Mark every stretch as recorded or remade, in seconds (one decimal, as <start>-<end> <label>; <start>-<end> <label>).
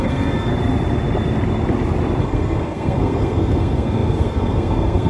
0.0-0.5 remade; 0.5-2.2 recorded; 2.2-5.1 remade